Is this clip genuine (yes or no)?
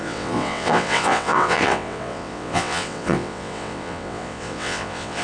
no